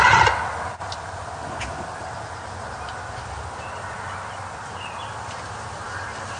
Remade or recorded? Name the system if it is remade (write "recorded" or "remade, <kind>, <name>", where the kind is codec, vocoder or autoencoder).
recorded